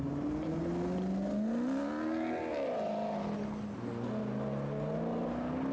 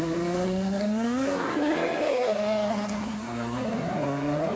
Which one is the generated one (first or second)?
second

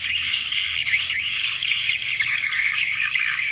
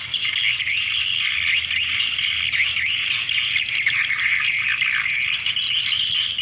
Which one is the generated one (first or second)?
first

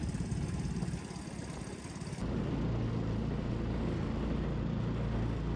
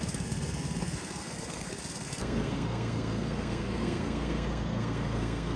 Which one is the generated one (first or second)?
second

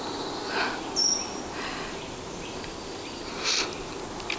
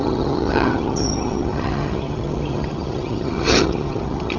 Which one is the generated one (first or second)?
second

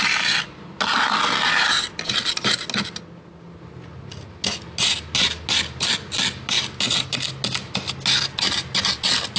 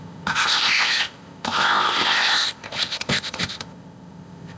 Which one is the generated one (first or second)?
second